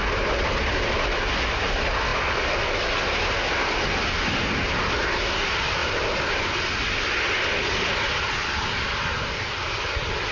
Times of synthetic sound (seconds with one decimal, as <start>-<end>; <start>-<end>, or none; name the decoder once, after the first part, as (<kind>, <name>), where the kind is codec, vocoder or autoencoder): none